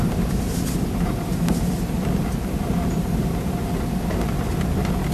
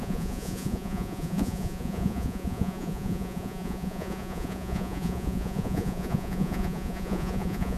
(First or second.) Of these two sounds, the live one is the first